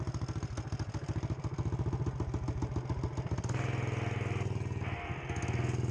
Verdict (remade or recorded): recorded